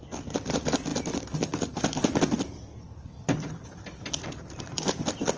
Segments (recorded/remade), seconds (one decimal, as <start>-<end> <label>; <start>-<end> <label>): 0.0-5.4 remade